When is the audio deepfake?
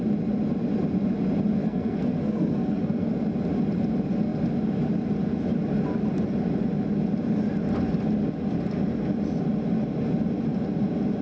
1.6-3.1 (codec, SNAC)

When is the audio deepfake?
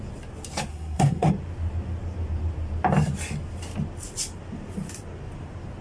0.7-1.3 (codec, SNAC)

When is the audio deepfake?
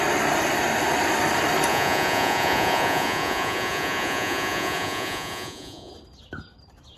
1.7-5.9 (vocoder, Vocos)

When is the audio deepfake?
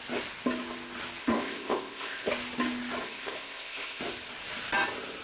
1.2-2.3 (codec, ZipCodec); 3.0-4.0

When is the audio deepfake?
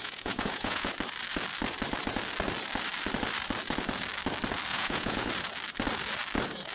0.0-0.9 (vocoder, Vocos); 4.7-5.3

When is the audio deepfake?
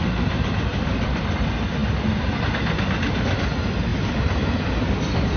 0.7-1.3 (vocoder, BigVGAN v2); 1.8-2.4; 3.9-4.9